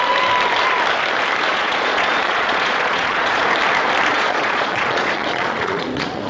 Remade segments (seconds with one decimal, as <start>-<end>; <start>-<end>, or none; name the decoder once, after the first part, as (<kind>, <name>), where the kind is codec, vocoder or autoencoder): 1.5-3.4 (vocoder, Vocos); 4.1-6.3